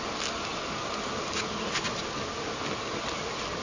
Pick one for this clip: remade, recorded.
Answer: recorded